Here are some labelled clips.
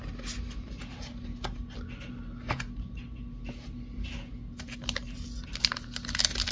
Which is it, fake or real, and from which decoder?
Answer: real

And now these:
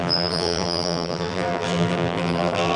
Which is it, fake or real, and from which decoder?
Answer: fake, vocoder, BigVGAN v2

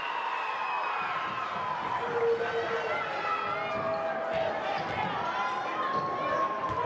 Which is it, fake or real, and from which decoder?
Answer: real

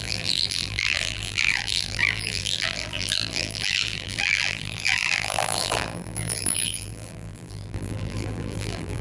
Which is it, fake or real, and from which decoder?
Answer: fake, vocoder, BigVGAN v2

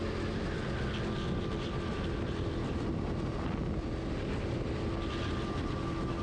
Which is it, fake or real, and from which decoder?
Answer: real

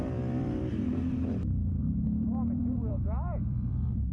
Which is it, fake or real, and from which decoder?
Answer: fake, vocoder, BigVGAN v2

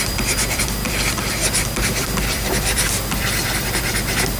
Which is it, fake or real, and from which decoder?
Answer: fake, vocoder, BigVGAN v2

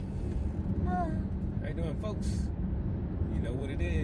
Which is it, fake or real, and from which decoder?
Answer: fake, vocoder, BigVGAN v2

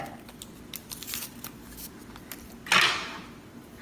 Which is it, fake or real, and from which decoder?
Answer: real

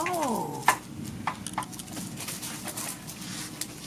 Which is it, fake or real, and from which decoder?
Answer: real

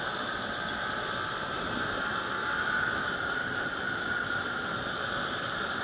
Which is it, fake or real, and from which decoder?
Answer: real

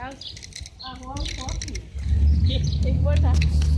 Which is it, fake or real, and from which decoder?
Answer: real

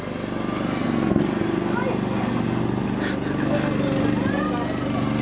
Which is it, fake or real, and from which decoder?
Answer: real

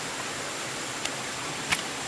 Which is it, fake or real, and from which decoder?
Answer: real